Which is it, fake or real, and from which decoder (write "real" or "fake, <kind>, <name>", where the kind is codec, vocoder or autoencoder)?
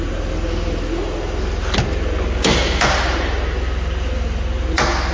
real